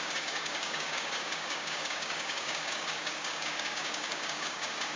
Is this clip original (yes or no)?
no